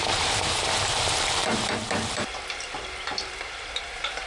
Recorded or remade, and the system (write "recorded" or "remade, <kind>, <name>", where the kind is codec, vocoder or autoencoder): remade, vocoder, BigVGAN v2